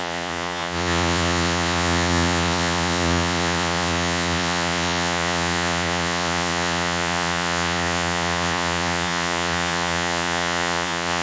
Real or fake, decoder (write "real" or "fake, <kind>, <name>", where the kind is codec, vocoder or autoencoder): fake, vocoder, Vocos